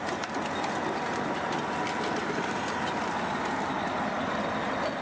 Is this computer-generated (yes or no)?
no